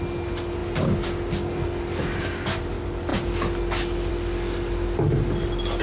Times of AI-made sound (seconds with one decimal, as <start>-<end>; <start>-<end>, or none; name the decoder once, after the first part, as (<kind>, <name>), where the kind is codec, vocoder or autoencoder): none